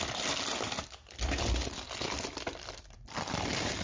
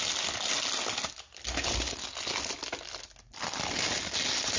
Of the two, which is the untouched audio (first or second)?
second